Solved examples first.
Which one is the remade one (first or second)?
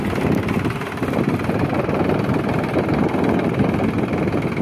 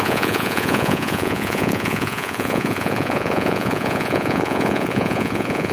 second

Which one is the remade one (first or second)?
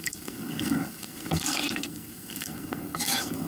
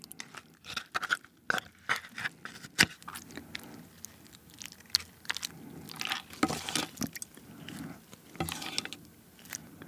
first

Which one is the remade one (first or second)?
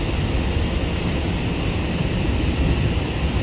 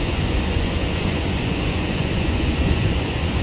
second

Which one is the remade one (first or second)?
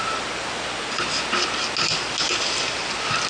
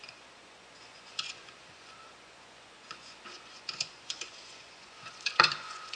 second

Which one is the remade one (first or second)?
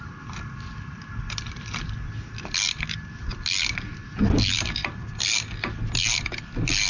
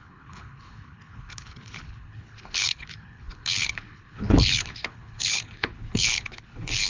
second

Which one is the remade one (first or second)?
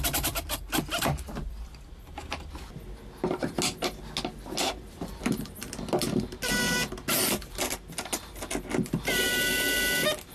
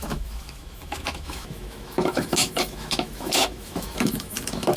second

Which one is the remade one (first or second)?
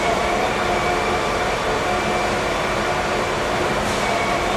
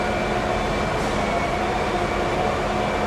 first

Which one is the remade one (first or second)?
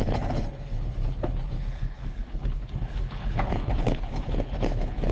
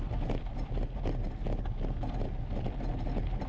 first